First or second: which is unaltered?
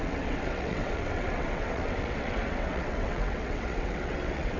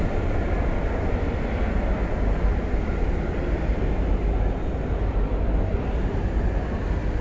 second